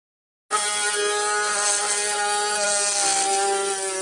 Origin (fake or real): real